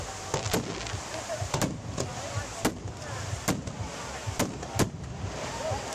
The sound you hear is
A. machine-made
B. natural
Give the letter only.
B